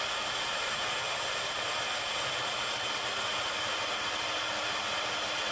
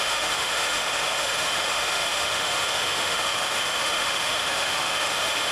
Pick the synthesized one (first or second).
second